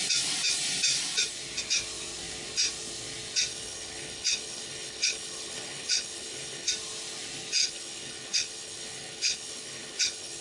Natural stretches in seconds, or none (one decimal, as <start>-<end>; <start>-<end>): 0.0-3.5; 6.7-7.6